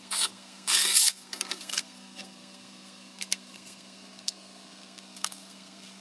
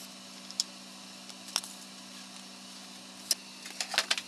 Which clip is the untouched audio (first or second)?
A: second